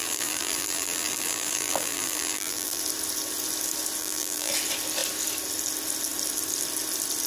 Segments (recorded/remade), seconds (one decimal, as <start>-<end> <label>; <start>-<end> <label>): 0.0-2.8 remade; 2.8-4.0 recorded; 4.0-4.5 remade; 4.5-7.3 recorded